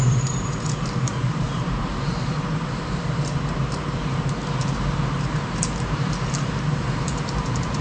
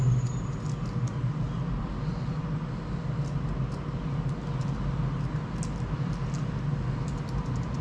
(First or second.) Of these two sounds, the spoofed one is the first